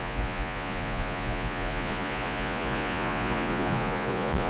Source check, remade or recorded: remade